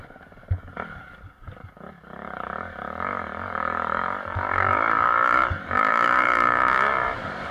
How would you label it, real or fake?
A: fake